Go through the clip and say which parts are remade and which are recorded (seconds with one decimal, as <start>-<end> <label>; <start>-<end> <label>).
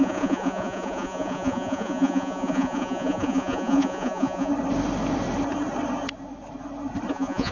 0.0-4.5 remade; 4.5-7.1 recorded; 7.1-7.5 remade